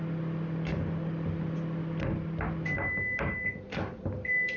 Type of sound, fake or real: real